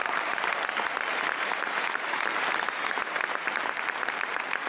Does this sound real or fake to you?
fake